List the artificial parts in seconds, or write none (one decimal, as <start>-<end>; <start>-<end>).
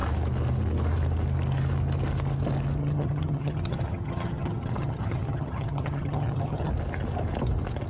2.8-6.7